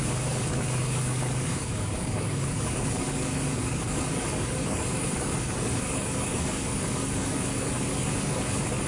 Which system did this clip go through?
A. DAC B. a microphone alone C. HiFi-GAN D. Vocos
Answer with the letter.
A